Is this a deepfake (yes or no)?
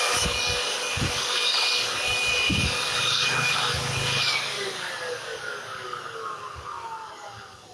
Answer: yes